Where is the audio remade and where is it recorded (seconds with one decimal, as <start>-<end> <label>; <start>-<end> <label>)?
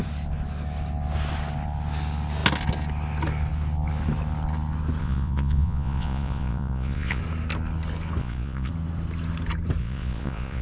0.0-5.0 recorded; 5.0-7.2 remade; 7.2-8.2 recorded; 8.2-8.7 remade; 8.7-9.8 recorded; 9.8-10.6 remade